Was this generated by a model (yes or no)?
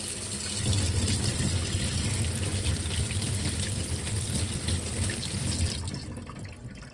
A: no